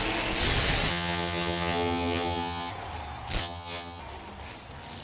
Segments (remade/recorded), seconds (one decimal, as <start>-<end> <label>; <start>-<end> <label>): 0.0-0.9 recorded; 0.9-2.7 remade; 2.7-3.4 recorded; 3.4-4.0 remade; 4.0-5.0 recorded